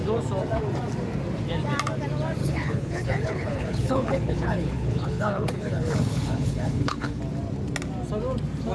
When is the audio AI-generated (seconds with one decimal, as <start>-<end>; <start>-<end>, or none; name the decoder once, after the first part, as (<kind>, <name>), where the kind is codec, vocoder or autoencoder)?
2.4-7.2 (codec, HILCodec)